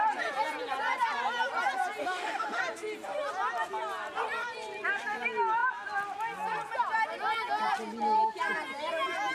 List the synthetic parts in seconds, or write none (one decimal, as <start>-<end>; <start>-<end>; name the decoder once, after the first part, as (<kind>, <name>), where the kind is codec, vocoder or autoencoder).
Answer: 2.0-2.6 (autoencoder, DAC-VAE)